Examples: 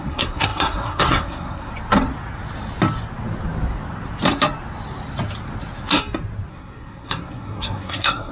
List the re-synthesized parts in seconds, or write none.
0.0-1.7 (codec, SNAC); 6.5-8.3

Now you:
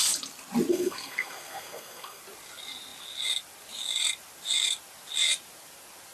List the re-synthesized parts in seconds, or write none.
0.7-2.2 (codec, SNAC)